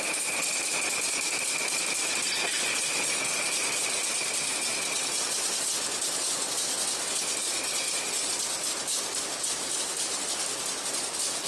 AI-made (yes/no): no